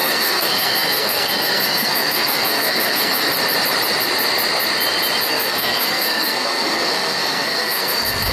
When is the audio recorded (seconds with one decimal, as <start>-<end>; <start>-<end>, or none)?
3.3-5.3